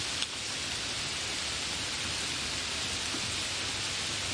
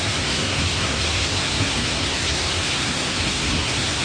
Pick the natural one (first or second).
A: first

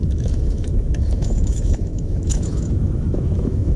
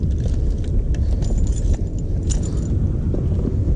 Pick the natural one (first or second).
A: second